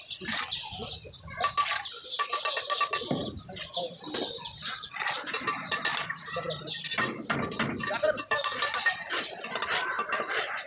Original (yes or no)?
yes